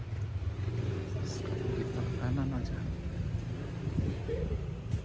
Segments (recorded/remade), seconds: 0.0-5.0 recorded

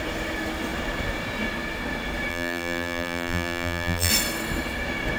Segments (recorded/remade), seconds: 0.0-2.3 recorded; 2.3-4.1 remade; 4.1-5.2 recorded

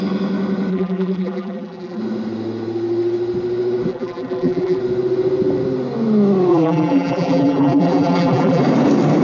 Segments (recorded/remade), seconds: 0.0-0.7 recorded; 0.7-2.0 remade; 2.0-3.9 recorded; 3.9-4.8 remade; 4.8-6.5 recorded; 6.5-8.6 remade; 8.6-9.2 recorded